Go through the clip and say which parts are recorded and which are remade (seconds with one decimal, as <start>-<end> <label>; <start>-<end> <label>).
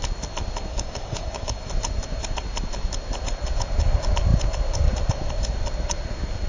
0.0-0.7 recorded; 0.7-1.7 remade; 1.7-6.5 recorded